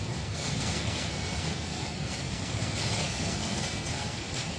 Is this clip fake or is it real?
fake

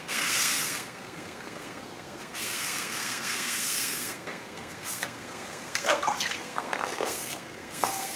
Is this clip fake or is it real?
fake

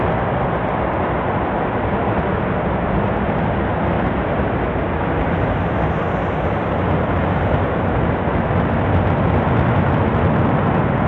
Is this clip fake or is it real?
real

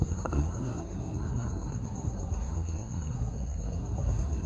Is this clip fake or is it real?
fake